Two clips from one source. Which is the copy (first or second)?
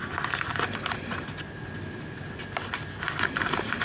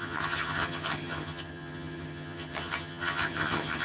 second